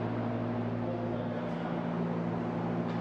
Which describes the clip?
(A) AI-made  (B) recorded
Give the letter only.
B